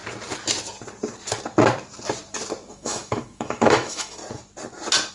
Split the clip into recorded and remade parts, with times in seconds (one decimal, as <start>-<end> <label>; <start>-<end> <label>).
0.0-2.7 recorded; 2.7-4.2 remade; 4.2-5.1 recorded

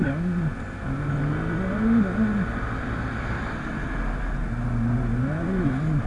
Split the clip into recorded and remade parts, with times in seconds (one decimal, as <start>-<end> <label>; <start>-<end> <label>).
0.0-6.1 recorded

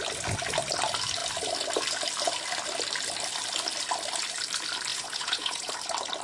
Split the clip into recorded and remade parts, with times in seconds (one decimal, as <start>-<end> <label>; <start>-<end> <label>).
0.0-4.9 recorded; 4.9-5.7 remade; 5.7-6.2 recorded

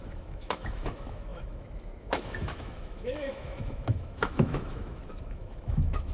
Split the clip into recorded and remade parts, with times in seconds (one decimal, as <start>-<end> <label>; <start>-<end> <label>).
0.0-6.1 remade

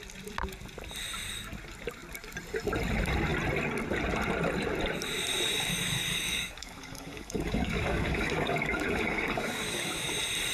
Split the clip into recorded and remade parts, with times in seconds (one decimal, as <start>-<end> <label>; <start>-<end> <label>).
0.0-5.7 recorded; 5.7-10.1 remade; 10.1-10.5 recorded

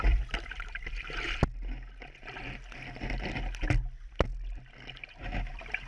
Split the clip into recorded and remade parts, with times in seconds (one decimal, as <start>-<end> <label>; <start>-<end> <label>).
0.0-1.4 remade; 1.4-4.9 recorded; 4.9-5.9 remade